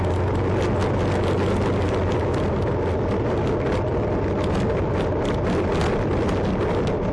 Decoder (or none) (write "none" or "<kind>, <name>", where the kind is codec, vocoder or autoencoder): none